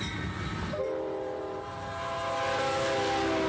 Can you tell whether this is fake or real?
real